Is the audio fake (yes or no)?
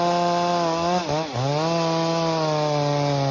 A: no